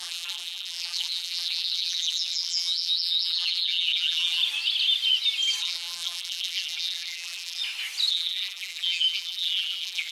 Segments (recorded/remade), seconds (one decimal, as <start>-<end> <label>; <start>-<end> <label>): 0.0-4.4 remade; 4.4-5.6 recorded; 5.6-7.6 remade; 7.6-8.1 recorded; 8.1-10.1 remade

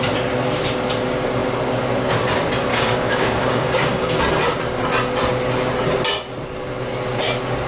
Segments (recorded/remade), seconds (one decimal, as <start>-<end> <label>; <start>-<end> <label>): 0.0-2.7 recorded; 2.7-4.2 remade; 4.2-7.7 recorded

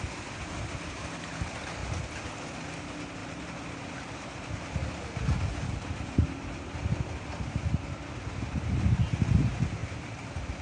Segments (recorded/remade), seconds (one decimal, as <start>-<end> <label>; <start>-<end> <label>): 0.0-1.8 recorded; 1.8-2.8 remade; 2.8-9.8 recorded; 9.8-10.6 remade